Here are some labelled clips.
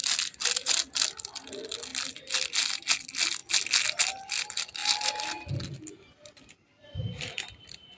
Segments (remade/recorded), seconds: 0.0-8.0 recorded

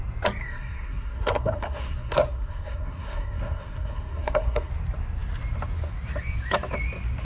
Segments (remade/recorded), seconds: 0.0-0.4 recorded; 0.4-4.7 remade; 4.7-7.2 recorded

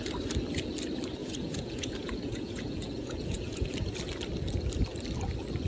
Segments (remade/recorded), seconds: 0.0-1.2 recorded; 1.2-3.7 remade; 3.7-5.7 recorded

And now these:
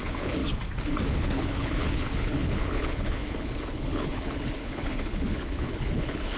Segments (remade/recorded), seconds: 0.0-0.4 remade; 0.4-1.1 recorded; 1.1-6.4 remade

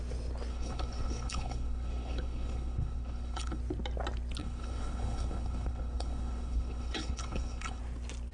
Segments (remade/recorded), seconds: 0.0-0.5 recorded; 0.5-3.6 remade; 3.6-4.4 recorded; 4.4-7.8 remade; 7.8-8.3 recorded

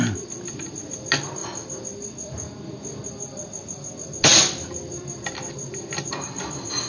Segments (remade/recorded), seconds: 0.0-6.9 recorded

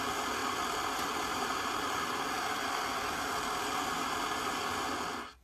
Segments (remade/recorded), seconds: 0.0-0.4 recorded; 0.4-3.6 remade; 3.6-5.4 recorded

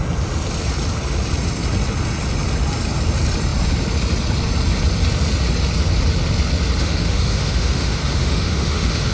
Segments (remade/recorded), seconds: 0.0-6.8 recorded; 6.8-9.1 remade